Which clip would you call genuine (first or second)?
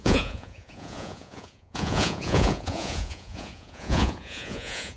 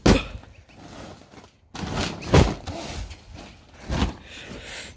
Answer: second